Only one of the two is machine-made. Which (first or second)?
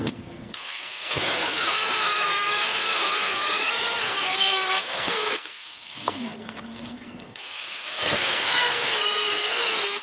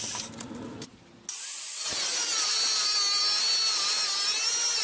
first